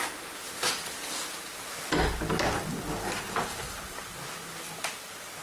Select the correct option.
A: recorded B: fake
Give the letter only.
A